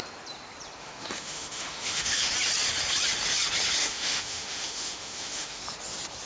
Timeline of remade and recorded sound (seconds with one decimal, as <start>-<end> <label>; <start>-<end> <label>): 0.0-0.8 recorded; 0.8-2.3 remade; 2.3-3.8 recorded; 3.8-5.6 remade; 5.6-6.3 recorded